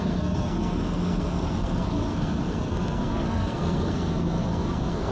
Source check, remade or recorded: remade